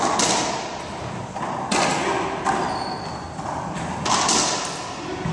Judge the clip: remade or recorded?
recorded